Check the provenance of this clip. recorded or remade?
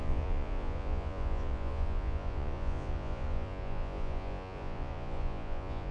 remade